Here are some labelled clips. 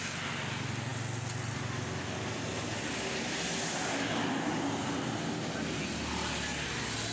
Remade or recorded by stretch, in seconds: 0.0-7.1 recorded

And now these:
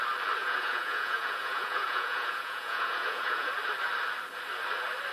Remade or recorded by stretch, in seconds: 0.0-0.4 recorded; 0.4-3.5 remade; 3.5-5.1 recorded

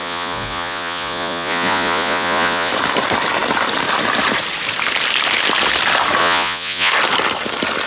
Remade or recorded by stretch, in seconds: 0.0-2.7 remade; 2.7-6.2 recorded; 6.2-6.9 remade; 6.9-7.9 recorded